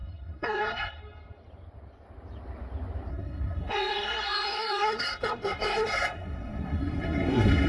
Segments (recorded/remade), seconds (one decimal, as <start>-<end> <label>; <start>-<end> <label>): 0.0-1.0 remade; 1.0-3.1 recorded; 3.1-7.7 remade